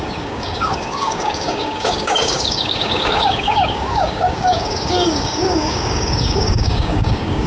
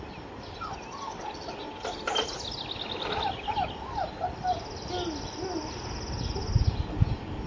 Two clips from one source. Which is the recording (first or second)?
second